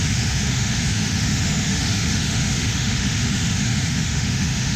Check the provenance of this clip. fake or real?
fake